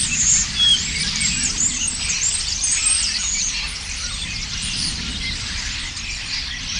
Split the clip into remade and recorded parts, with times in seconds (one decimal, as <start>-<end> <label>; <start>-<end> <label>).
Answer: 0.0-6.8 recorded